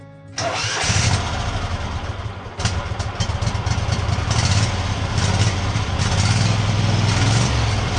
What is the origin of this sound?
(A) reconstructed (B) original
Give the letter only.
B